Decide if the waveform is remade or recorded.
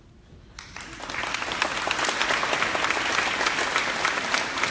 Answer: recorded